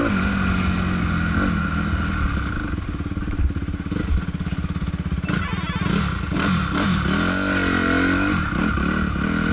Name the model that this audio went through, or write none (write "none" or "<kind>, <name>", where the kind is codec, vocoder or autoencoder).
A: none